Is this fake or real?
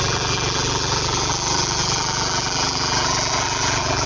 fake